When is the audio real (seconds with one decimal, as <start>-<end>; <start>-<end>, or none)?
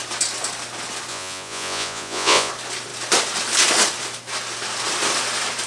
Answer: 0.0-1.1; 2.5-5.7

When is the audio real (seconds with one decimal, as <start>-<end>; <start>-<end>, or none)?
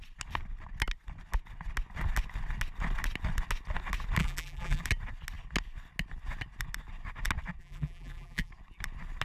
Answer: 0.0-4.2; 4.8-7.6; 8.5-9.2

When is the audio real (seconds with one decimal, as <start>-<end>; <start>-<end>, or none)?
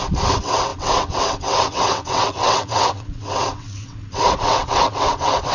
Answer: none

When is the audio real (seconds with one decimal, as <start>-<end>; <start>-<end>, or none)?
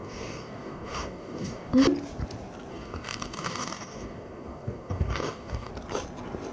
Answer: 1.7-2.7; 5.7-6.5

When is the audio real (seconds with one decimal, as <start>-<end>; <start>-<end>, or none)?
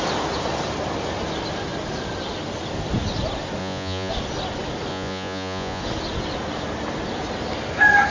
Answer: 0.0-3.6; 4.1-4.9; 5.8-8.1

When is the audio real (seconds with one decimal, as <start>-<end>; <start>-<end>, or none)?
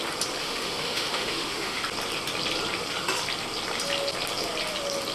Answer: 0.0-0.4; 1.8-5.1